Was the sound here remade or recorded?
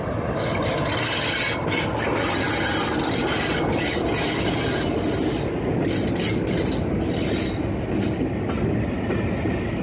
recorded